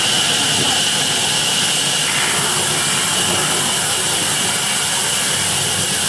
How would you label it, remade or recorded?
recorded